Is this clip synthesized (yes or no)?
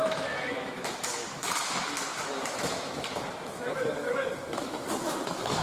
yes